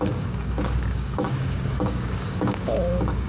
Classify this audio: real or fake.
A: fake